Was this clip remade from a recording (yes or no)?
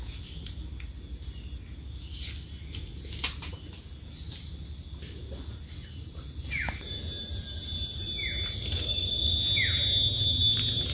no